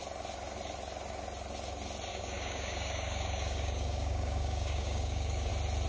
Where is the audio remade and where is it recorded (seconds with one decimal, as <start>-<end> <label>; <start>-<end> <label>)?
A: 0.0-2.1 recorded; 2.1-5.5 remade; 5.5-5.9 recorded